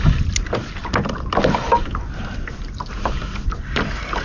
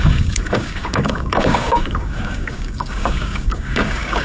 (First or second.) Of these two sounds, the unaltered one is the first